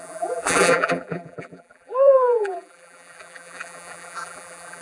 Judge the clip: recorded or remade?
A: remade